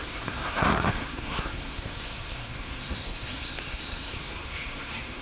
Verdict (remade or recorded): remade